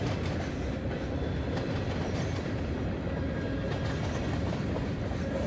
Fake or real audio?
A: real